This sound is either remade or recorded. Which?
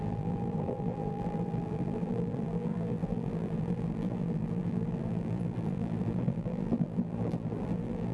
remade